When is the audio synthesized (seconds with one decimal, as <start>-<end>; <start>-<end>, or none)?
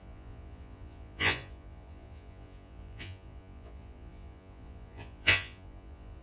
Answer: 0.0-6.2